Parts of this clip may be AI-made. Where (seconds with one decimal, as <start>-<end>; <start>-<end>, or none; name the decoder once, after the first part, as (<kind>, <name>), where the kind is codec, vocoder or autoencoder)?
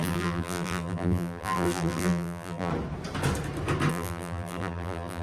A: 0.0-2.7 (vocoder, BigVGAN v2); 3.9-5.2